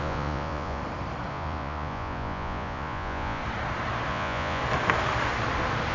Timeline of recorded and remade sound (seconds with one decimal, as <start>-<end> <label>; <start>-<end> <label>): 0.0-0.8 remade; 0.8-1.3 recorded; 1.3-3.4 remade; 3.4-4.1 recorded; 4.1-4.6 remade; 4.6-5.9 recorded